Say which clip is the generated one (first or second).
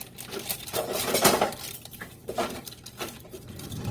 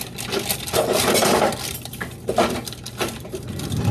first